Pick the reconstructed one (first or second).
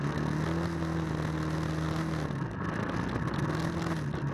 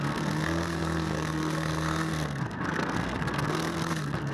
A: second